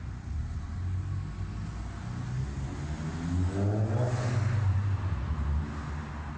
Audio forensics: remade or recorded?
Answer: recorded